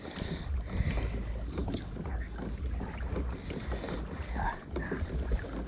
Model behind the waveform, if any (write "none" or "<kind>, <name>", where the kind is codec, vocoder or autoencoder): none